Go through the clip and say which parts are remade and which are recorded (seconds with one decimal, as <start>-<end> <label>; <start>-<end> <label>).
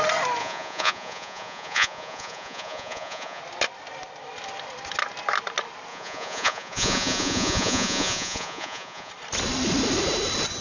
0.0-0.4 recorded; 0.4-3.4 remade; 3.4-5.9 recorded; 5.9-9.1 remade; 9.1-10.6 recorded